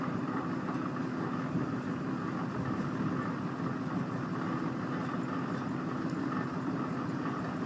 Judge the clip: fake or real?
real